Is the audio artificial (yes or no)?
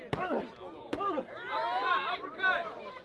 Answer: no